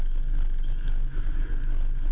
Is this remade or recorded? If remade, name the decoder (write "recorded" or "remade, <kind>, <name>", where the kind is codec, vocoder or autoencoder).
recorded